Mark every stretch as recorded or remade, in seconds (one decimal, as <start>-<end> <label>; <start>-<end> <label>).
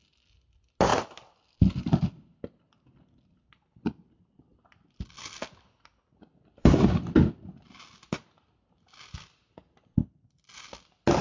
0.0-11.2 recorded